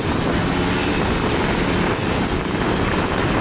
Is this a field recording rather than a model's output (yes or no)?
yes